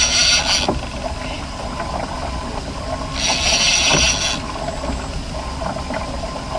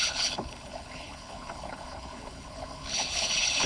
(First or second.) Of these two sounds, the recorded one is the first